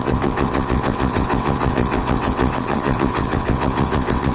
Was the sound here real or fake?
fake